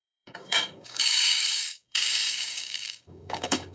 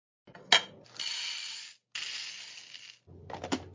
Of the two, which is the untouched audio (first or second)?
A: second